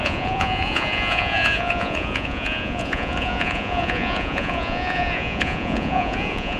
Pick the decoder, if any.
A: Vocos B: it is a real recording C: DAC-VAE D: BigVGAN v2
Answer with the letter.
A